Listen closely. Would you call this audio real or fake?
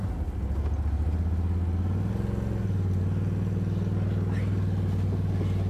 real